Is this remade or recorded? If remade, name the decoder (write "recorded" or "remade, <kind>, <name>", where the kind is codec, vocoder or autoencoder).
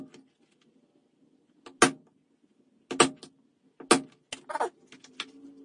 recorded